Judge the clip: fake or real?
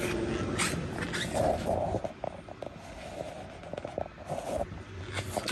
real